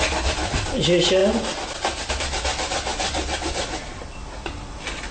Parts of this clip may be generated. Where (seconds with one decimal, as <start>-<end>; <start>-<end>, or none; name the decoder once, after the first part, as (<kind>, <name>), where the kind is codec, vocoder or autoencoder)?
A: none